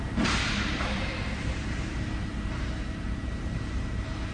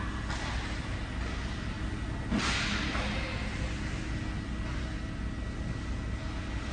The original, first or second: second